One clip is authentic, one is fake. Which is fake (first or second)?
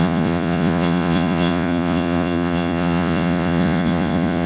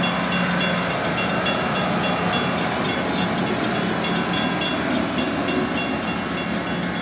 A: first